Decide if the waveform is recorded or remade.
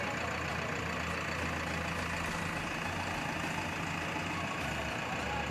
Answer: recorded